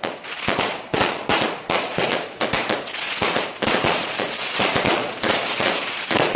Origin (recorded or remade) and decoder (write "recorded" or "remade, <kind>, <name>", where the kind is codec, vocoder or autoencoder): remade, vocoder, Vocos